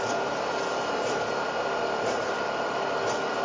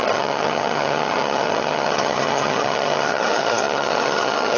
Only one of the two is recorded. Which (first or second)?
first